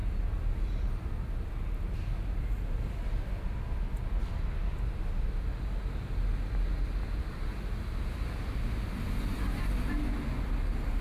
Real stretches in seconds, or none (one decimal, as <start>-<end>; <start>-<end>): 0.0-11.0